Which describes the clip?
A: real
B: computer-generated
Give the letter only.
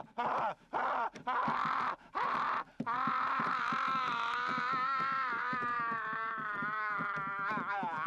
B